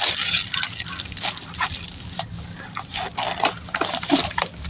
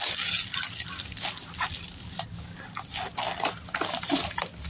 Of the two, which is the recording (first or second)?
second